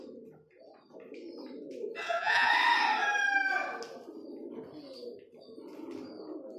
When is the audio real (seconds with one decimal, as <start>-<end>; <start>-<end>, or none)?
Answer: 0.0-2.0; 2.5-6.6